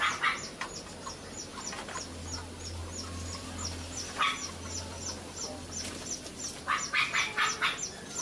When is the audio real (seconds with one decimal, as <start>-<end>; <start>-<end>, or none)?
0.0-8.2

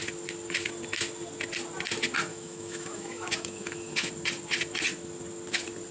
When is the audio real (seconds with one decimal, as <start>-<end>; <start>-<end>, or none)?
0.0-2.3; 4.1-5.9

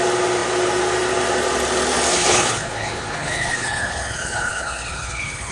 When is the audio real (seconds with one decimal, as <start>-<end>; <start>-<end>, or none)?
0.0-2.1

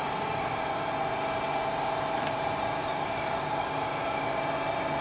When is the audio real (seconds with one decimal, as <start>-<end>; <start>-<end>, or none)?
0.9-2.8; 4.4-5.0

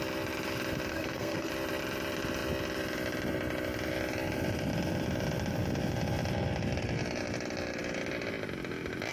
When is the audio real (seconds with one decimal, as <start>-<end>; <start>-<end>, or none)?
0.0-0.9; 1.5-9.1